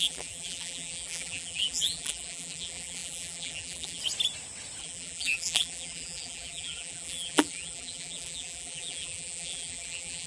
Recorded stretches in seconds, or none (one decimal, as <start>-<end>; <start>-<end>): 4.0-4.8